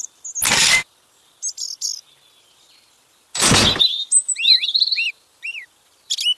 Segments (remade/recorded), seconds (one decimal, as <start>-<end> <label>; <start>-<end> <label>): 0.0-6.4 recorded